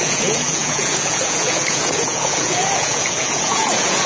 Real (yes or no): no